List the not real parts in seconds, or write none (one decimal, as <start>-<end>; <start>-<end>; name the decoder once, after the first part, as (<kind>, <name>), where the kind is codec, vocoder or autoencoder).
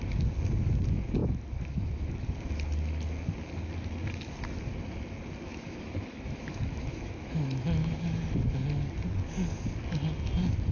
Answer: 1.2-2.3 (autoencoder, DAC-VAE); 5.5-8.2